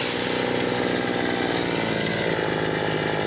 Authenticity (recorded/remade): recorded